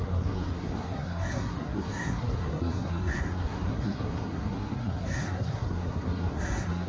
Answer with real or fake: fake